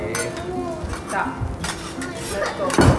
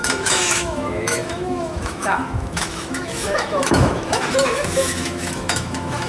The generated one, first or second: second